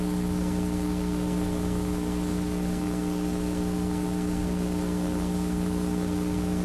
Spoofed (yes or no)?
yes